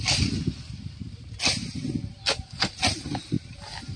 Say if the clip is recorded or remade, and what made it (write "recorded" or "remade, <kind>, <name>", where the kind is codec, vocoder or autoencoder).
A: recorded